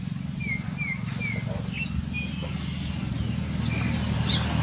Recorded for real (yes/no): yes